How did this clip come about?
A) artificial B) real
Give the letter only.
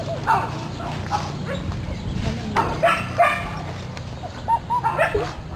B